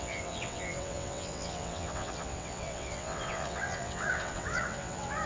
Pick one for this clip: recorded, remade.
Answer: remade